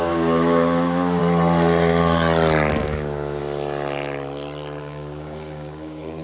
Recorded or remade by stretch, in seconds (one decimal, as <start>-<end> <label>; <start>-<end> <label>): 0.0-1.2 remade; 1.2-2.8 recorded; 2.8-3.4 remade; 3.4-4.8 recorded; 4.8-6.2 remade